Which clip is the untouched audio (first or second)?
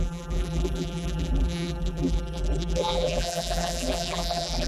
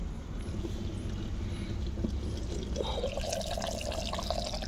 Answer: second